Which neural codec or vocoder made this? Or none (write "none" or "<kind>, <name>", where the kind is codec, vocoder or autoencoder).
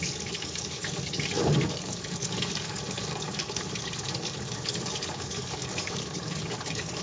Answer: codec, DAC